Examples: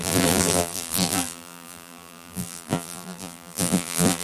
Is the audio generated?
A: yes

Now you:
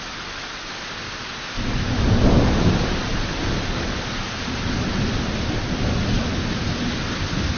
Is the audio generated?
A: no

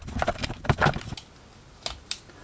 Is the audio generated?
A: no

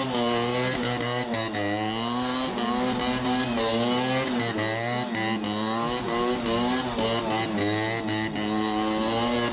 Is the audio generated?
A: no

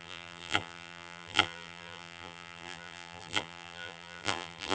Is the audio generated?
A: yes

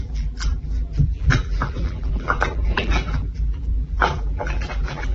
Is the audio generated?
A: yes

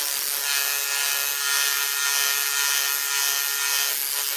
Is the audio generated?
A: no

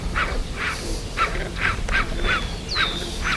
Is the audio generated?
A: no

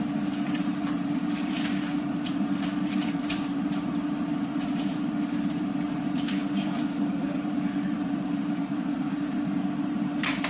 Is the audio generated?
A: yes